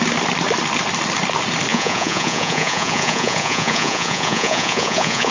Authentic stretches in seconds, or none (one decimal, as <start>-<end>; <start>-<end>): 0.0-1.7